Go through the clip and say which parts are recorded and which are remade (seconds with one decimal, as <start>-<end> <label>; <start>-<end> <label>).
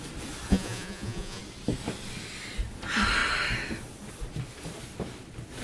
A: 0.0-0.5 recorded; 0.5-1.4 remade; 1.4-5.6 recorded